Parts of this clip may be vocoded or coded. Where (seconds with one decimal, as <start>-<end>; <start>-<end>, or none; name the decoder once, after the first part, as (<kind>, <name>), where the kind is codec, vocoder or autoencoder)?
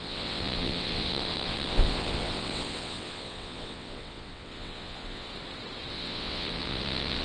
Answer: 0.0-5.3 (vocoder, WaveNeXt); 5.9-7.2